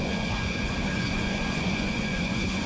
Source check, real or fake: fake